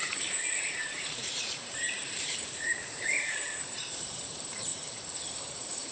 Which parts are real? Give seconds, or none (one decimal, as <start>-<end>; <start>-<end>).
1.2-2.0; 4.7-5.5